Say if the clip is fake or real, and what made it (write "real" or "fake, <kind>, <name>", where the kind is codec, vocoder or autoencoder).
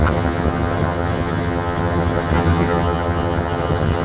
fake, vocoder, HiFi-GAN